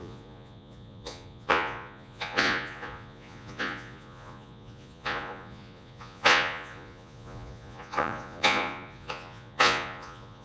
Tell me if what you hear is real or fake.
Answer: fake